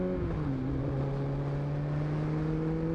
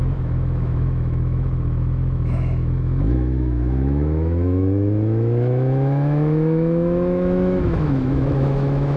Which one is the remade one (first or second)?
second